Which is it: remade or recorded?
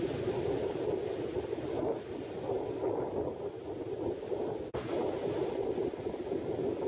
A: recorded